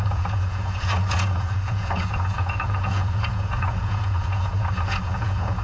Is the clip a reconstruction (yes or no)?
yes